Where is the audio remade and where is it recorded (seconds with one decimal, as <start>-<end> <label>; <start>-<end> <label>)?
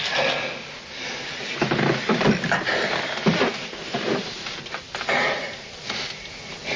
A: 0.0-6.8 recorded